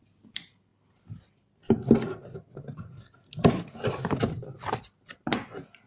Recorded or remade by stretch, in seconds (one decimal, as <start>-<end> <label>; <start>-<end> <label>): 0.0-5.9 recorded